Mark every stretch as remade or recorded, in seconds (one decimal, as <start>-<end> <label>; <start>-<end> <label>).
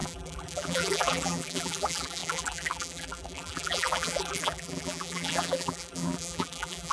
0.0-6.9 remade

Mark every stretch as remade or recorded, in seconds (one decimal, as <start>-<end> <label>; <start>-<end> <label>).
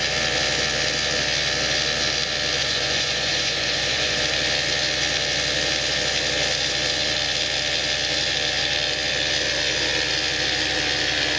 0.0-2.6 recorded; 2.6-4.2 remade; 4.2-11.4 recorded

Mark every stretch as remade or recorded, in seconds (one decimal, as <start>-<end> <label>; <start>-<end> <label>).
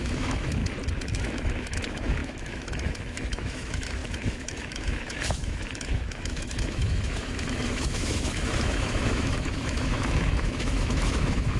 0.0-0.6 remade; 0.6-1.1 recorded; 1.1-11.6 remade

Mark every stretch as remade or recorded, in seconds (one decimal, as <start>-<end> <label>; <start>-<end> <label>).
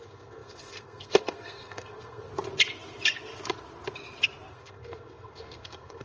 0.0-2.3 remade; 2.3-4.5 recorded; 4.5-6.0 remade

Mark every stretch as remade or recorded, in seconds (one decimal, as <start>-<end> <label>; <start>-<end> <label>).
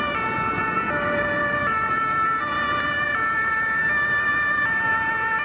0.0-0.6 remade; 0.6-2.4 recorded; 2.4-3.8 remade; 3.8-4.9 recorded; 4.9-5.4 remade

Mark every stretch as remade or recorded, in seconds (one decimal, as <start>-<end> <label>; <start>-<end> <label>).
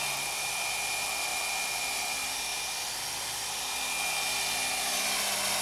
0.0-5.6 recorded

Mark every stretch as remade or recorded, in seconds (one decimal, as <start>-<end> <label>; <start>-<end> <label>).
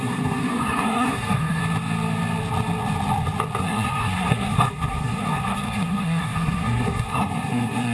0.0-1.6 remade; 1.6-3.6 recorded; 3.6-7.9 remade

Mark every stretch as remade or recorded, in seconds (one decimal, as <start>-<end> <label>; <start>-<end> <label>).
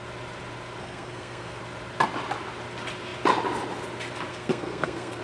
0.0-0.8 recorded; 0.8-1.6 remade; 1.6-4.3 recorded; 4.3-5.2 remade